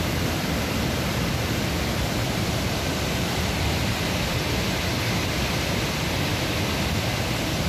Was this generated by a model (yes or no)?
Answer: yes